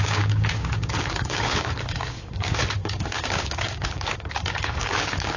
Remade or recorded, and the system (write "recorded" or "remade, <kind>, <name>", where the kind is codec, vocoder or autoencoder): remade, codec, DAC